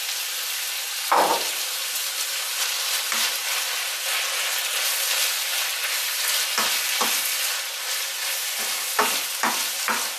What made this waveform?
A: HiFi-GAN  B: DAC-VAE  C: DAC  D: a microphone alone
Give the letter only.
D